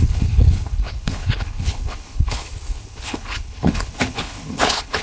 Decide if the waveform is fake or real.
fake